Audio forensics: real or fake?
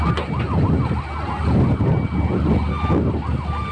real